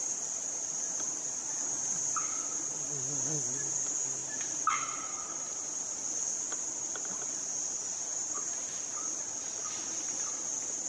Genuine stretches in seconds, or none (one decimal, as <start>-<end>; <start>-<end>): 0.0-10.9